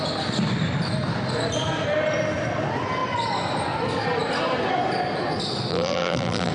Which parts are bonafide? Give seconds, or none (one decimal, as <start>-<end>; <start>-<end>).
0.0-5.7